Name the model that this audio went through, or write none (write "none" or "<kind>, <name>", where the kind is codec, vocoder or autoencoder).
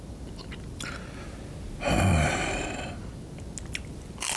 none